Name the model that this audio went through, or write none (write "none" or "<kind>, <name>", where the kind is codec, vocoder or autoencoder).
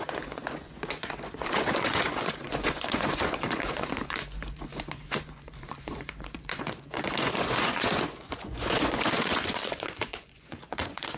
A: vocoder, Vocos